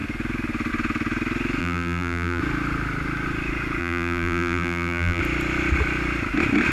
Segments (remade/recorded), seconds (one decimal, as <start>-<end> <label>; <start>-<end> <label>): 0.0-1.6 recorded; 1.6-2.4 remade; 2.4-3.8 recorded; 3.8-5.2 remade; 5.2-6.7 recorded